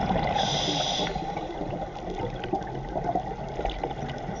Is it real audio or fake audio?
real